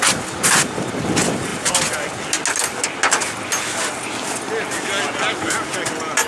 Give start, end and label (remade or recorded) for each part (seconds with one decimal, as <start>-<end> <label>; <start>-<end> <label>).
0.0-6.3 recorded